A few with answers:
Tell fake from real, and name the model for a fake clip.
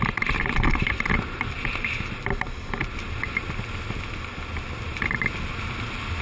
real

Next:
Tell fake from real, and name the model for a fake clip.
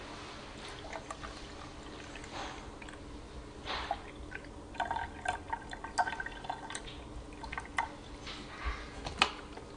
real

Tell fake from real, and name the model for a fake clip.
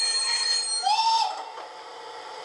real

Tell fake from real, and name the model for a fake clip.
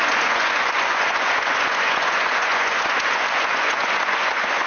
fake, vocoder, Vocos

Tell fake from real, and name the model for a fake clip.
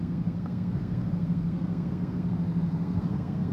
fake, codec, SNAC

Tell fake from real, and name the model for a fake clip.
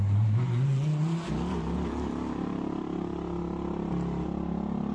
real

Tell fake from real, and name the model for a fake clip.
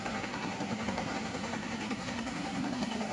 fake, codec, SNAC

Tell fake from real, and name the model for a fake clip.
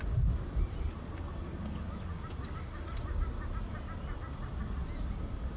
real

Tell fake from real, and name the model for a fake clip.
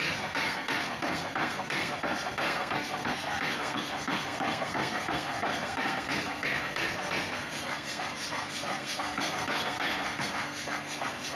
fake, codec, SNAC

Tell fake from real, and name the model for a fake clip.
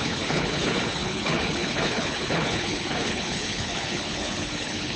fake, codec, HILCodec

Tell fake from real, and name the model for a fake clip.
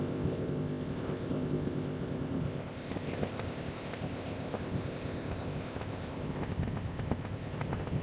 fake, codec, ZipCodec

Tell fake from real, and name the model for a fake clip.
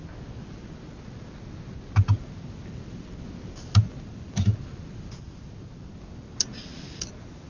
real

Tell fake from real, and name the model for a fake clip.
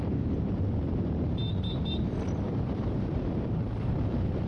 fake, vocoder, BigVGAN v2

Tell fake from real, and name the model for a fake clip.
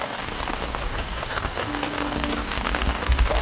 fake, codec, DAC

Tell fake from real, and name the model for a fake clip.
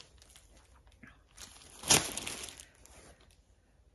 real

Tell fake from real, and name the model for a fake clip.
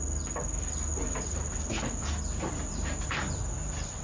real